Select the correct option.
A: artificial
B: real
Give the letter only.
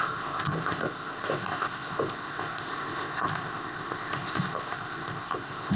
A